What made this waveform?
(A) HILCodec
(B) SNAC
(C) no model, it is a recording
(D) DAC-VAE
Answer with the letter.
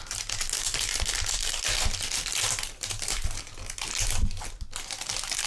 C